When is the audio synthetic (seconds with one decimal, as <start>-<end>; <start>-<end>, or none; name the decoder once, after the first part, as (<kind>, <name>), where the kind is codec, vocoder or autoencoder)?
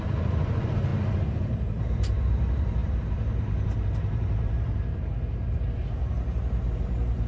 0.0-5.1 (vocoder, BigVGAN v2); 6.1-7.3